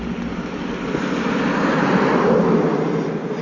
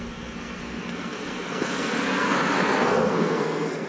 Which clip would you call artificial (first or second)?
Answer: second